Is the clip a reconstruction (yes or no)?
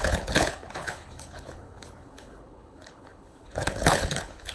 yes